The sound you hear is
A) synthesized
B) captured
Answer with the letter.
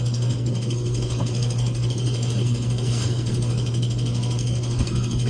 A